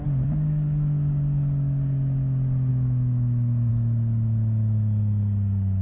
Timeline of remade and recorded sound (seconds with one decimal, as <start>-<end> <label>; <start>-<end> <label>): 0.0-2.7 recorded; 2.7-3.7 remade; 3.7-5.8 recorded